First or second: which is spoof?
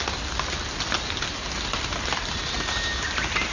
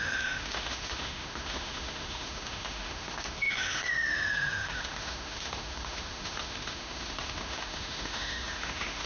second